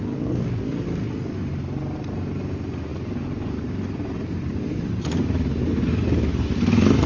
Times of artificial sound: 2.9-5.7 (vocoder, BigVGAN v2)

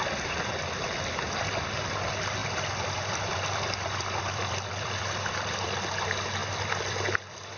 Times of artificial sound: 2.4-5.8 (vocoder, BigVGAN v2); 6.4-7.6

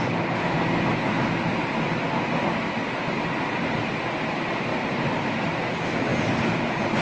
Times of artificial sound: 4.7-5.6 (vocoder, BigVGAN v2)

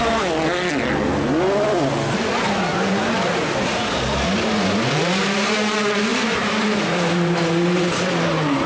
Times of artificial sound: 6.1-8.1 (vocoder, BigVGAN v2)

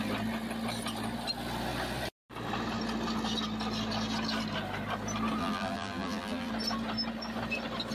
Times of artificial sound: 5.4-6.5 (vocoder, BigVGAN v2)

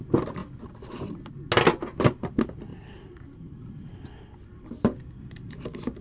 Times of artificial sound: 0.4-1.3 (vocoder, BigVGAN v2); 2.7-6.0